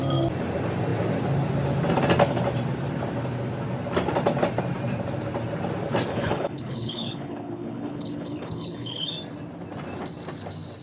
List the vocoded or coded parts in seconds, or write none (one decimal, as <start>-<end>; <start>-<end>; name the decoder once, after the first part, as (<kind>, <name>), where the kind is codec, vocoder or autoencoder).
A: 6.1-9.1 (codec, HILCodec)

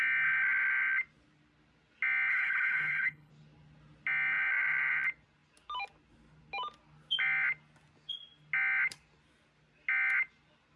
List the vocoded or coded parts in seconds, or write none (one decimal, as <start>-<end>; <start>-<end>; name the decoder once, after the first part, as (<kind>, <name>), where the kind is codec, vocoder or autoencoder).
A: 2.3-3.3 (codec, HILCodec)